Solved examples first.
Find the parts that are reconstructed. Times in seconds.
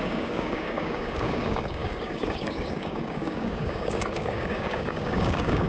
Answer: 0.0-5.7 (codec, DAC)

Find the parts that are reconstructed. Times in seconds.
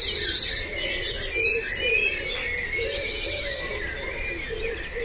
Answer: none